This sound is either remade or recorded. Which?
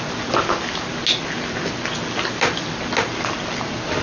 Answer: recorded